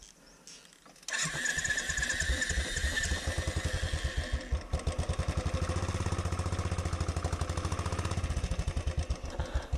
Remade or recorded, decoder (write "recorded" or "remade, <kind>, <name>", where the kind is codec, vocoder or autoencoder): recorded